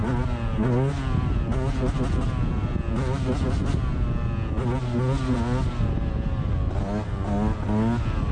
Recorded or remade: recorded